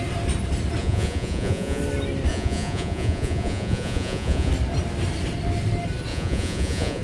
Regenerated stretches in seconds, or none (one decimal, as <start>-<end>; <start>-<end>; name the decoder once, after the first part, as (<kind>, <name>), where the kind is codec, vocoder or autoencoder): 0.8-1.8 (vocoder, Vocos); 2.3-4.5; 6.1-7.0